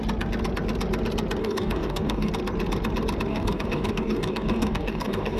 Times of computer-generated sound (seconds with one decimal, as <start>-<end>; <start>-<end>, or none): 1.4-2.3; 3.3-5.4